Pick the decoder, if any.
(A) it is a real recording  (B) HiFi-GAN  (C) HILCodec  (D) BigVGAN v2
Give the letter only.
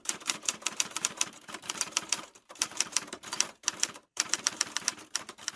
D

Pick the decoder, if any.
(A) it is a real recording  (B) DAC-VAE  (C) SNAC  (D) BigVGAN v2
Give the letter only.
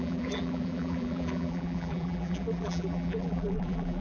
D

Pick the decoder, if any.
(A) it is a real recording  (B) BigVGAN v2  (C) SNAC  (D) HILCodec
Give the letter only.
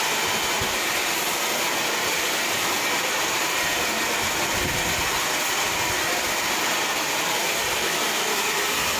B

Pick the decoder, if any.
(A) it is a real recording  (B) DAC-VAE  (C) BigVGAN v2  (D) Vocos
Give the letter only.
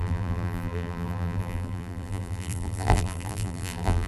C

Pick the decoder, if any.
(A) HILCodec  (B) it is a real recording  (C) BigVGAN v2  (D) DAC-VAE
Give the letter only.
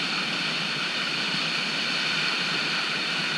B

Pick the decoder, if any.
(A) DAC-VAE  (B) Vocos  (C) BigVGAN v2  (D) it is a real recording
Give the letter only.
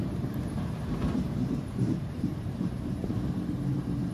C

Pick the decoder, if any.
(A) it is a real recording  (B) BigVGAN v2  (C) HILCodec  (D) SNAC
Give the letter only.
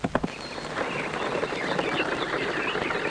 A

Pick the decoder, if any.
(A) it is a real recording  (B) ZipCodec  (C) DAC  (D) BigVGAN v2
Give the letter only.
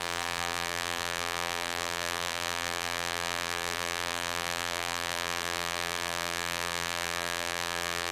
D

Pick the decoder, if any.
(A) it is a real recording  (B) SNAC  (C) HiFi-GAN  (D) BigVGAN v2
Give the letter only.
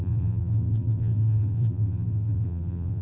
D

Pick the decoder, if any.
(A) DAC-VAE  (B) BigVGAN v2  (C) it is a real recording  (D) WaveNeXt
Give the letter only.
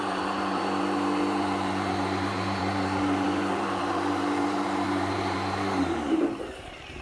B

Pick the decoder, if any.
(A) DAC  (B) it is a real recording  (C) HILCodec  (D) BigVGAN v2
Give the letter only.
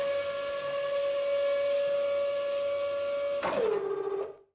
B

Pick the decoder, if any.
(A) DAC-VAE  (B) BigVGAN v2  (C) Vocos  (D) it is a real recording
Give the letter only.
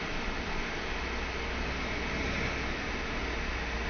D